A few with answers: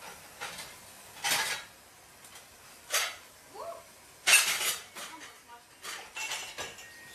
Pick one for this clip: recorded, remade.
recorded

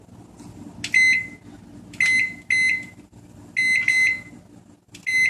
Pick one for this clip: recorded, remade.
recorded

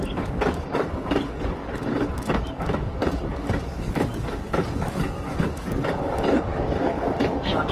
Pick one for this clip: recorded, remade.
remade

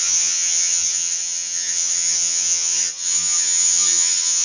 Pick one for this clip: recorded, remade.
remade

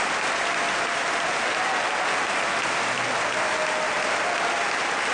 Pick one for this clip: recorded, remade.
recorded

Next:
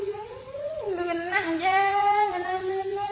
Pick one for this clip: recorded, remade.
remade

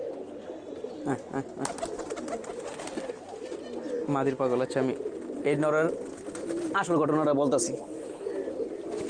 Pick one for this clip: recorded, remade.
recorded